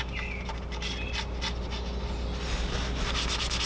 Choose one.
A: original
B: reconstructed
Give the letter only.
A